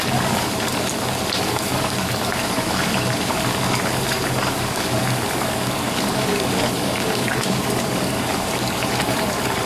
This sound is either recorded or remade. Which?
remade